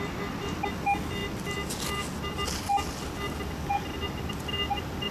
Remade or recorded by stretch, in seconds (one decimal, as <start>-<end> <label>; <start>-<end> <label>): 0.0-5.1 recorded